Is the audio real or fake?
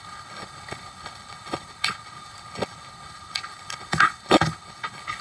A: fake